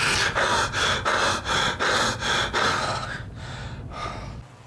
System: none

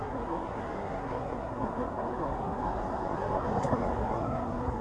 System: codec, SNAC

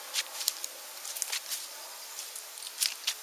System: none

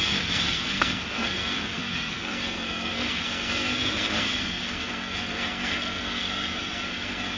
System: codec, SNAC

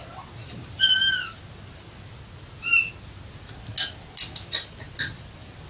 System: none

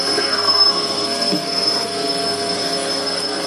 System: codec, SNAC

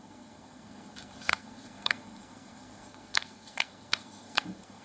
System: codec, SNAC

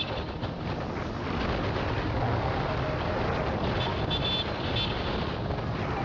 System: none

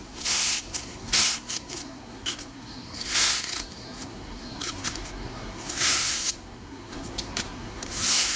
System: codec, SNAC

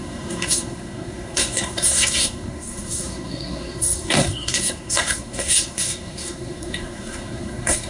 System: codec, SNAC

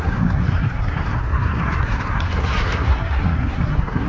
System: codec, SNAC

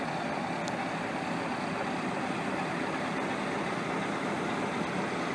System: none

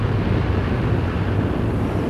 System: none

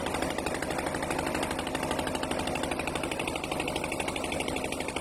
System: none